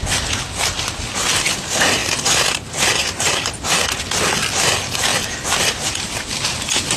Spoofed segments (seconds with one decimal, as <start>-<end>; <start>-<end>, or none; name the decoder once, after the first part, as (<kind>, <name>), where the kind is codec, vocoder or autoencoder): 2.0-3.6 (vocoder, BigVGAN v2); 5.1-6.3